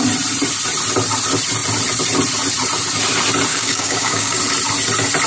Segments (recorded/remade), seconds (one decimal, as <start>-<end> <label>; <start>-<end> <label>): 0.0-3.5 recorded; 3.5-4.4 remade; 4.4-5.3 recorded

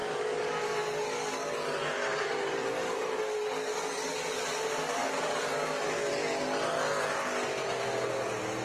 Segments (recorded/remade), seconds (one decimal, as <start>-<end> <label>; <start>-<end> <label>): 0.0-4.4 remade; 4.4-5.0 recorded; 5.0-6.1 remade; 6.1-8.6 recorded

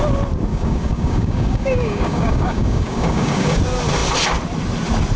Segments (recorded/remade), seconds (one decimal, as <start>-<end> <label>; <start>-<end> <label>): 0.0-0.5 recorded; 0.5-3.6 remade; 3.6-5.2 recorded

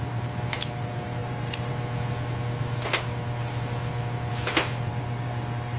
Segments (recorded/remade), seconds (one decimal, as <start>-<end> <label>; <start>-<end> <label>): 0.0-1.2 recorded; 1.2-1.7 remade; 1.7-4.9 recorded; 4.9-5.8 remade

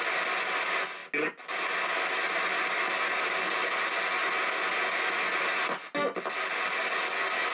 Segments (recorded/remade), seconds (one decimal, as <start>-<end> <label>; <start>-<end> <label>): 0.0-7.5 recorded

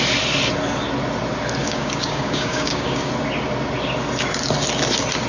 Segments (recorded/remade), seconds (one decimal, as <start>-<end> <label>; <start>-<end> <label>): 0.0-1.6 recorded; 1.6-3.1 remade; 3.1-5.3 recorded